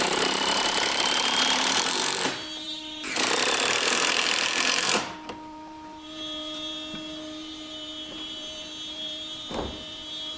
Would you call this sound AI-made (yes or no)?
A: yes